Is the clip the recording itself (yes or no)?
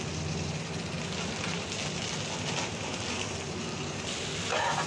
yes